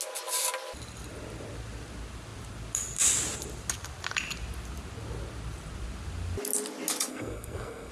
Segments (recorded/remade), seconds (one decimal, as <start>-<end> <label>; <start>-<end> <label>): 0.0-7.1 recorded; 7.1-7.9 remade